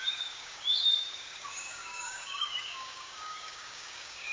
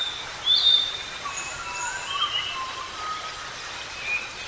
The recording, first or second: second